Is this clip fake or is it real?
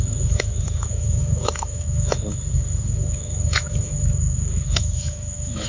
fake